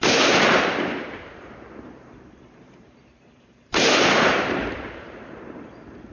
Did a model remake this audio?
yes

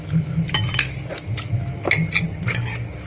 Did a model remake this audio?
no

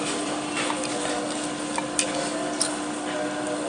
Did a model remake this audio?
no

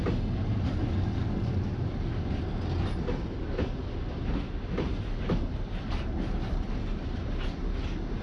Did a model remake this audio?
no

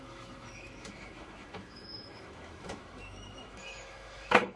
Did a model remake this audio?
yes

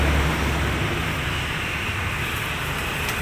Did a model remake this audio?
no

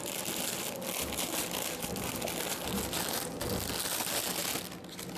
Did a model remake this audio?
no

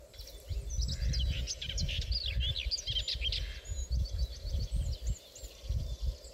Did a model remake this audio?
no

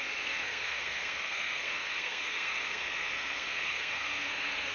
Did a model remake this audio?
yes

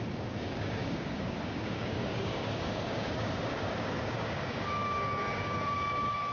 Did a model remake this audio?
yes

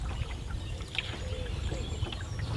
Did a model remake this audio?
no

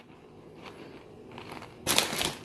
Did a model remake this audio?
no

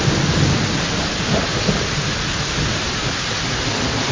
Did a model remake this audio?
no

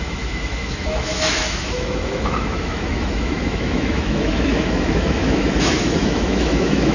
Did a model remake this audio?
yes